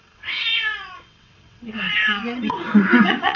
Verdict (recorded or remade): remade